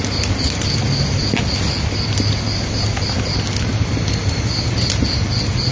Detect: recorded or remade recorded